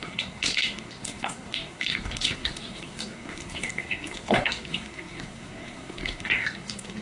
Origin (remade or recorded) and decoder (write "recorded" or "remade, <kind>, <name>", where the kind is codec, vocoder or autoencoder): remade, codec, SNAC